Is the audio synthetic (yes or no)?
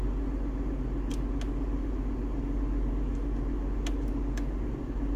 no